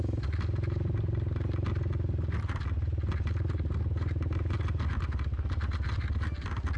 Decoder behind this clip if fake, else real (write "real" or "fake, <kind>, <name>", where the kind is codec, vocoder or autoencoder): real